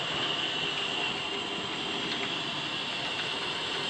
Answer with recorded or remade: recorded